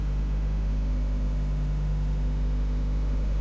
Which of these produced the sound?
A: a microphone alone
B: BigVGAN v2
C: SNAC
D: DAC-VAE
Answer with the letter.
D